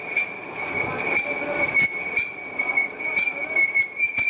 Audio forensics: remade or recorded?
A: recorded